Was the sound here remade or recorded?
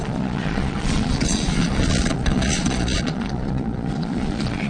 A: remade